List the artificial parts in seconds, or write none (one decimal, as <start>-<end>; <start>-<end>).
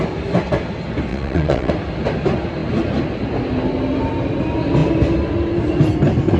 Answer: 1.1-1.7